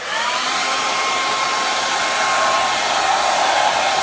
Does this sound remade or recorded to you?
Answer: remade